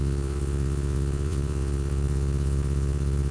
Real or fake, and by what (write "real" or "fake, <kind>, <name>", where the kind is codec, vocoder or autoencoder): fake, vocoder, Vocos